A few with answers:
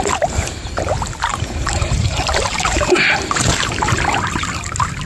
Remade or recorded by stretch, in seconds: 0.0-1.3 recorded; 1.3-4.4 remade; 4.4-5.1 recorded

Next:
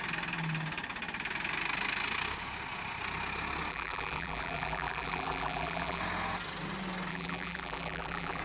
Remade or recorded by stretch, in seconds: 0.0-3.7 recorded; 3.7-6.0 remade; 6.0-7.1 recorded; 7.1-8.4 remade

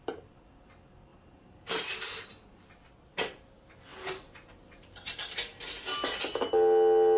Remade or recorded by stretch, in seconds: 0.0-1.1 recorded; 1.1-2.6 remade; 2.6-3.9 recorded; 3.9-5.1 remade; 5.1-7.2 recorded

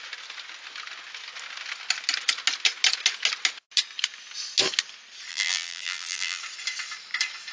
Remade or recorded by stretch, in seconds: 0.0-5.3 recorded; 5.3-6.4 remade; 6.4-7.5 recorded

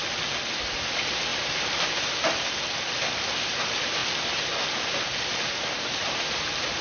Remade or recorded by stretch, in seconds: 0.0-1.3 recorded; 1.3-2.5 remade; 2.5-4.0 recorded; 4.0-6.8 remade